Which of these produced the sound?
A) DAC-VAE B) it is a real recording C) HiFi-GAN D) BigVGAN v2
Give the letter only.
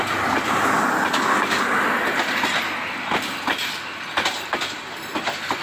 B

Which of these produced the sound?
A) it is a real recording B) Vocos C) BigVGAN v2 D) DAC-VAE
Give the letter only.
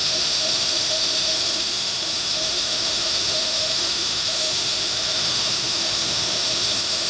D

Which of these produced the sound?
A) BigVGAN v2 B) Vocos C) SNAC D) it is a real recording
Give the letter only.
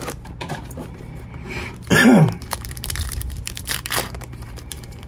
A